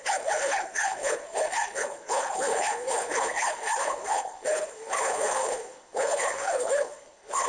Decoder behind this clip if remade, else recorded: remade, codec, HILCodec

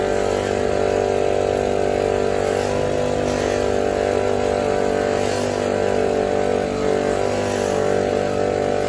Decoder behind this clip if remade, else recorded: recorded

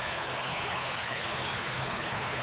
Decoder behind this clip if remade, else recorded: remade, codec, HILCodec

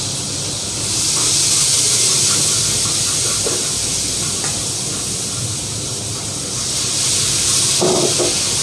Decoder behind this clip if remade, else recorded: recorded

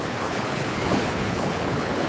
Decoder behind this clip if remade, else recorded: remade, codec, HILCodec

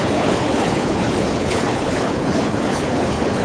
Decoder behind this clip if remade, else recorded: remade, codec, HILCodec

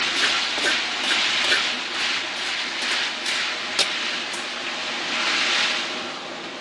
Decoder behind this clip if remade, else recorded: recorded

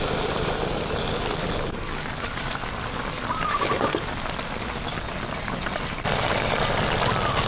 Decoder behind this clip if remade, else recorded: recorded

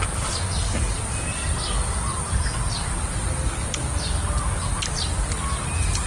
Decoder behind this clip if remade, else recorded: recorded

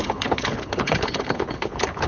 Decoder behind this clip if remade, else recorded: remade, codec, HILCodec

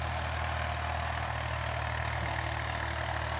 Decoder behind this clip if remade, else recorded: recorded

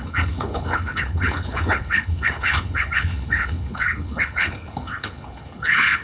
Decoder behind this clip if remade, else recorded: remade, codec, HILCodec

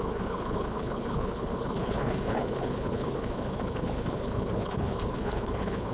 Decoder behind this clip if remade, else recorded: remade, codec, HILCodec